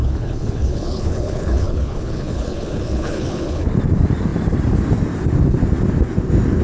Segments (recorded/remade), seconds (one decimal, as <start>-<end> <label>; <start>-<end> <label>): 0.0-3.8 remade; 3.8-6.6 recorded